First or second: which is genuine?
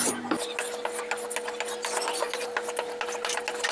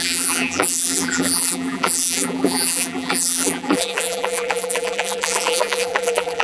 first